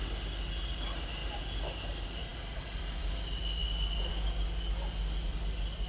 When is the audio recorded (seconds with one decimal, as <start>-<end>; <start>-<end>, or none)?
0.0-5.9